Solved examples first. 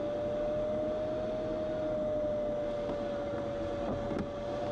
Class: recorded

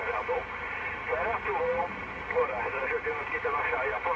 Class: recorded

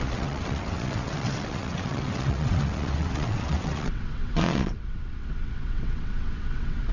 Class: remade